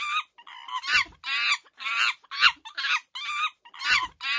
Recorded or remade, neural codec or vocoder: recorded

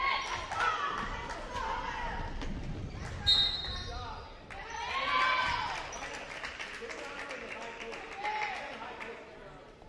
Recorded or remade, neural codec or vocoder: recorded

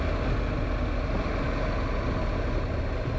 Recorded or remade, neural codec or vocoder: recorded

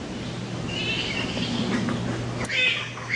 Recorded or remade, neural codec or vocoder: recorded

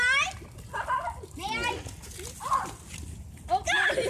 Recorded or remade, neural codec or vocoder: recorded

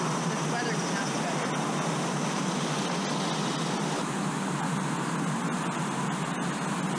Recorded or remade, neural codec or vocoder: recorded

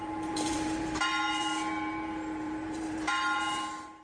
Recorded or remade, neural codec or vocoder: remade, vocoder, BigVGAN v2